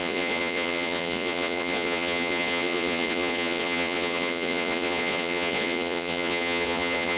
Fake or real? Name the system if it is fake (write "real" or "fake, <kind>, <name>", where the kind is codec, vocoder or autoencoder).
fake, vocoder, Vocos